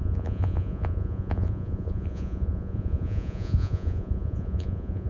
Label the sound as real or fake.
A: fake